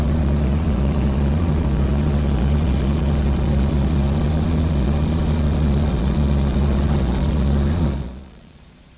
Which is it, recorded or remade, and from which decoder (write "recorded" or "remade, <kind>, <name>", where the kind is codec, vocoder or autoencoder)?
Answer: remade, vocoder, Vocos